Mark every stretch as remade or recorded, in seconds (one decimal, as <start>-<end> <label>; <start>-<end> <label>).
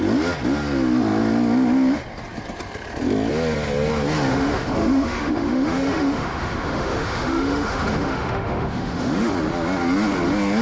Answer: 0.0-4.3 recorded; 4.3-9.3 remade; 9.3-10.6 recorded